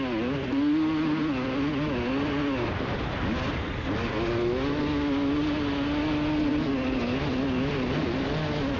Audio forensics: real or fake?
real